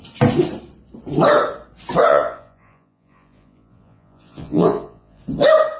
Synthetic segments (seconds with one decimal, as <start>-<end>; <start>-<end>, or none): 2.1-5.2